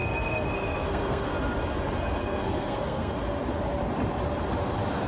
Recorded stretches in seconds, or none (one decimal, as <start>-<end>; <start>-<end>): 1.3-2.2; 3.1-5.1